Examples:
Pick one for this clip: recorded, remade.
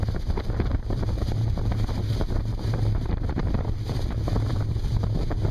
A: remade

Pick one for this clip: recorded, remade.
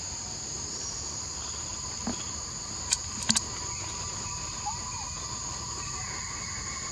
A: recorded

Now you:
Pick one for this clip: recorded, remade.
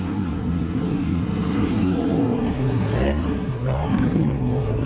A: remade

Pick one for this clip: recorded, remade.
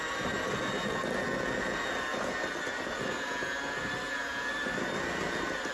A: recorded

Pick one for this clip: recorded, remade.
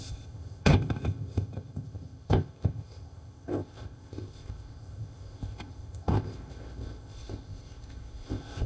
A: remade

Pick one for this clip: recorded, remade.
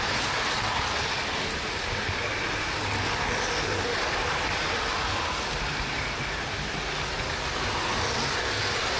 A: recorded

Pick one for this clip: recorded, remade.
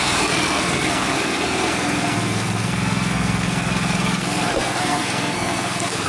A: remade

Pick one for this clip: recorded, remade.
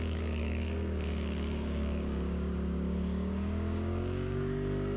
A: remade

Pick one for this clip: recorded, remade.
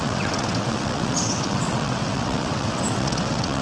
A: remade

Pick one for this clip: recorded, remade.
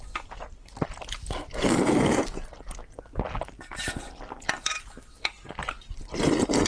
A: recorded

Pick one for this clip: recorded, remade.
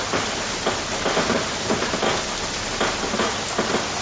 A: recorded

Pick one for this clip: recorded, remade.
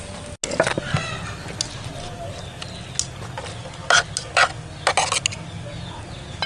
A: recorded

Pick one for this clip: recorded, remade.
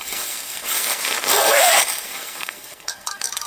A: remade